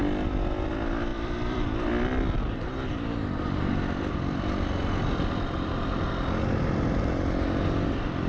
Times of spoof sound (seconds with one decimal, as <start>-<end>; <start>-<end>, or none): 1.1-6.1